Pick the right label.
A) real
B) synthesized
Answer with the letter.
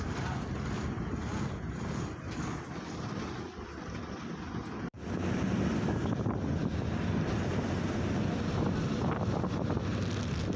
A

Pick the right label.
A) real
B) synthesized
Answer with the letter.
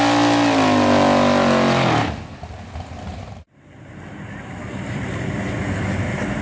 A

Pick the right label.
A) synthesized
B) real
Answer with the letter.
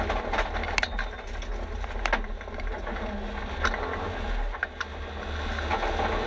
B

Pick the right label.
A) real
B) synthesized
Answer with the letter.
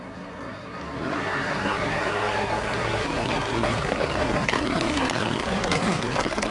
B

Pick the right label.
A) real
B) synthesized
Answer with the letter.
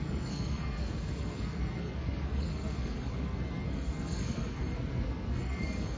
B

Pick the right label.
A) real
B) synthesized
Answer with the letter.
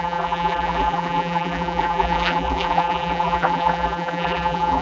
B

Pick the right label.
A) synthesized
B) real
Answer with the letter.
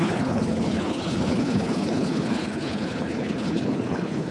A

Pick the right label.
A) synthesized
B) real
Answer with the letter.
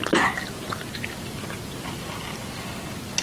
B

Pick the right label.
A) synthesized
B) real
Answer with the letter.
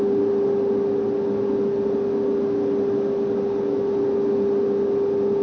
B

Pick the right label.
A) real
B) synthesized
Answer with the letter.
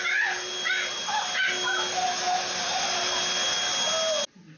A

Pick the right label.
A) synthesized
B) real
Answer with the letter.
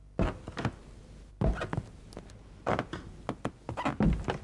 B